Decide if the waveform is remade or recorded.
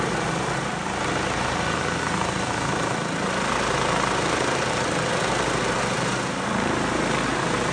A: recorded